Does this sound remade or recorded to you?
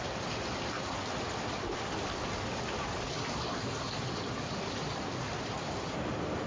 recorded